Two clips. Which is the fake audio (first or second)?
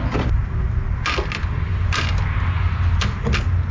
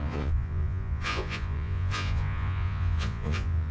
second